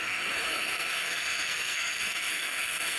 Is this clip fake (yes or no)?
yes